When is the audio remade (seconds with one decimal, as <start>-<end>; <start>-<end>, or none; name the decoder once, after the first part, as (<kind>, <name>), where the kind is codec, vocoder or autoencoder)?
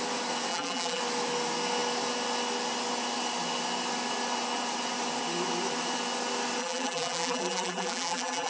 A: 0.5-1.0 (vocoder, BigVGAN v2); 6.6-8.5